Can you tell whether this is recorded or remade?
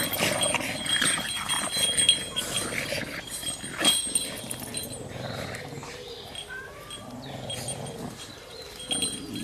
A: recorded